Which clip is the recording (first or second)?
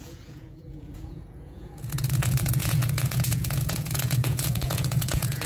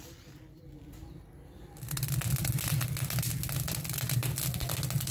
second